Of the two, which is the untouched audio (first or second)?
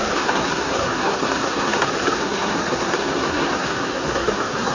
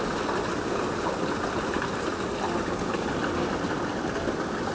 second